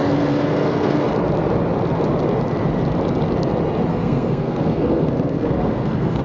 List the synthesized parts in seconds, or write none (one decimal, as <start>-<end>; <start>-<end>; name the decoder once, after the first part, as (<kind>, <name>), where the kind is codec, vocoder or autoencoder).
0.0-1.1 (codec, SNAC); 3.9-6.2